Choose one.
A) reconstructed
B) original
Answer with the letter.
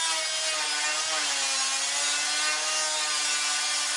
B